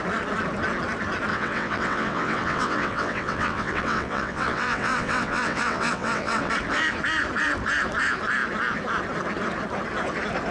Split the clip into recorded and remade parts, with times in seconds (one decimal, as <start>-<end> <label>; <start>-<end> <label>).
0.0-1.3 recorded; 1.3-6.5 remade; 6.5-10.5 recorded